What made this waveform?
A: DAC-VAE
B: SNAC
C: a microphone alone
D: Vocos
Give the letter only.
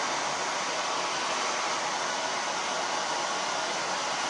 C